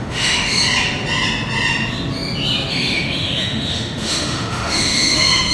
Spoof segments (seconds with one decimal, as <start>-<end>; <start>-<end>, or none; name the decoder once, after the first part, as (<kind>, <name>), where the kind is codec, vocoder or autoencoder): 0.0-0.6 (autoencoder, DAC-VAE); 2.7-5.5